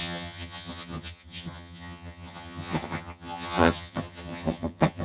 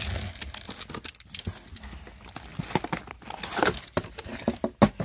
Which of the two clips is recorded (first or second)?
second